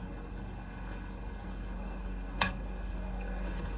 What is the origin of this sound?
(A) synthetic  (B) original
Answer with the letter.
A